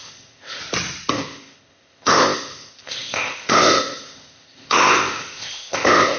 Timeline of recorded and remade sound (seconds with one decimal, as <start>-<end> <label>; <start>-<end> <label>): 0.0-0.6 remade; 0.6-1.1 recorded; 1.1-6.2 remade